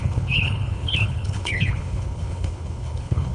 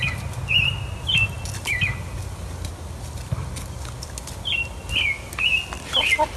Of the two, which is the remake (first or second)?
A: first